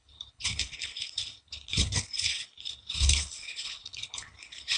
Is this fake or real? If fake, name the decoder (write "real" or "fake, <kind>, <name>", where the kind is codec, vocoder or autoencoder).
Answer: fake, codec, HILCodec